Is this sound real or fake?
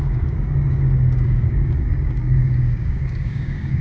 fake